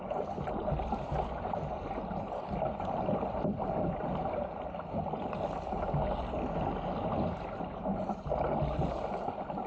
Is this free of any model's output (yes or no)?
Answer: yes